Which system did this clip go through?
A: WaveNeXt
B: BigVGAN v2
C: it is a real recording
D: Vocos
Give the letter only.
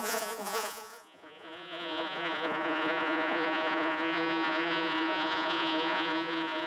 D